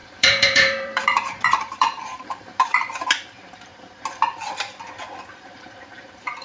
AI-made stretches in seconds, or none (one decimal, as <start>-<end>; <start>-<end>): 0.0-3.7; 5.2-6.4